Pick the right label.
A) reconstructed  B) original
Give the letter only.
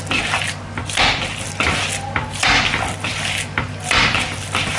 B